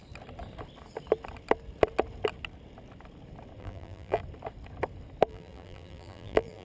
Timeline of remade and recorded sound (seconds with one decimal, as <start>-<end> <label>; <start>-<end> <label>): 0.0-3.6 recorded; 3.6-4.2 remade; 4.2-5.3 recorded; 5.3-6.6 remade